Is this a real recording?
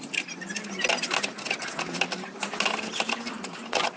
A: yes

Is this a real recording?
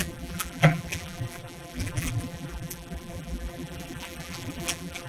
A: no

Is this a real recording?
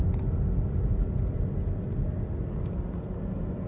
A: yes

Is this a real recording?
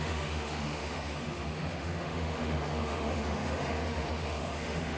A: no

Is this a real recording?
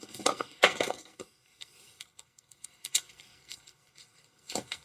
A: no